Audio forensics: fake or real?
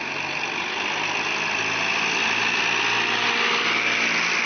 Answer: real